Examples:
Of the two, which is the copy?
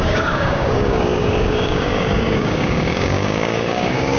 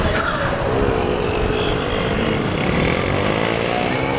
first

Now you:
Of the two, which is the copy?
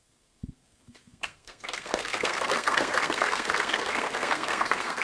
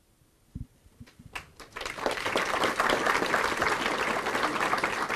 first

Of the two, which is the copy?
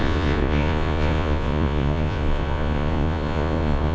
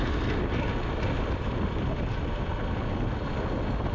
first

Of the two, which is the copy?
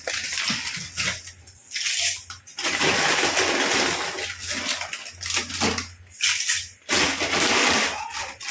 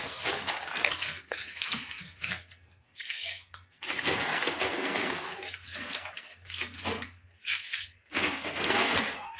second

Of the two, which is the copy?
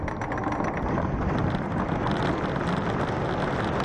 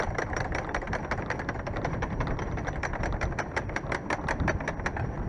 second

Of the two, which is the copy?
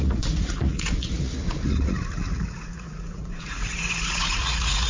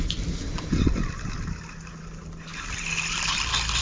first